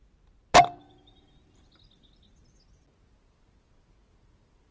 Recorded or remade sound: recorded